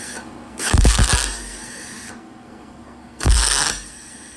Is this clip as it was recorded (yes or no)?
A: no